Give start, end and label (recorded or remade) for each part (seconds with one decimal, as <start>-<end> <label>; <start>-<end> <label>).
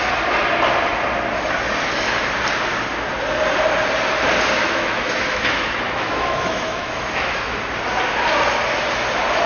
0.0-4.6 recorded; 4.6-7.6 remade; 7.6-9.5 recorded